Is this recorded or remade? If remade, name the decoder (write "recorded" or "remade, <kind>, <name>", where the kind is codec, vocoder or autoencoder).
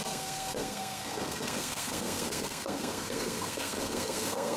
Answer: remade, codec, SNAC